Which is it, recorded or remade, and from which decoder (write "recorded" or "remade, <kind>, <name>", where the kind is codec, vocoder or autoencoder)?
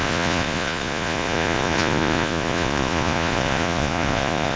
remade, vocoder, Vocos